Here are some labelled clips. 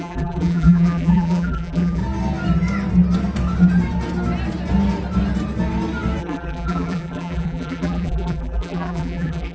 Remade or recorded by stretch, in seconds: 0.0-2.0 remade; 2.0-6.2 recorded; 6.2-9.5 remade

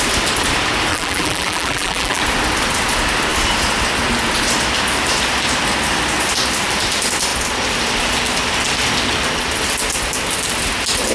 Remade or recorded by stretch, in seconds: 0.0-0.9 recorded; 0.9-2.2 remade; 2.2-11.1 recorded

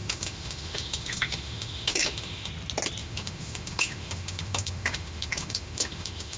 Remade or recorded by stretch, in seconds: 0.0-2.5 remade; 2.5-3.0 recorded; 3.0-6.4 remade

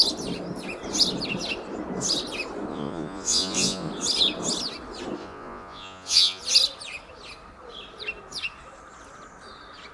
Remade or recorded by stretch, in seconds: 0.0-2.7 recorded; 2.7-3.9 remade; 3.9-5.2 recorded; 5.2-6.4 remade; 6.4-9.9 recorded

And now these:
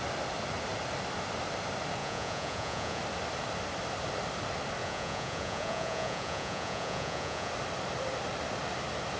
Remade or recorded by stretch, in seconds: 0.0-2.0 recorded; 2.0-3.0 remade; 3.0-4.8 recorded; 4.8-7.5 remade; 7.5-9.2 recorded

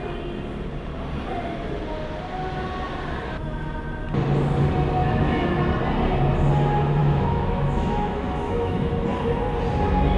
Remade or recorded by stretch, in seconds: 0.0-5.0 recorded; 5.0-5.6 remade; 5.6-7.0 recorded; 7.0-8.9 remade; 8.9-10.2 recorded